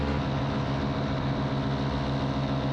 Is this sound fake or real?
real